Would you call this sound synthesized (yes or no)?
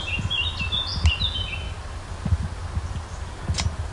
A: no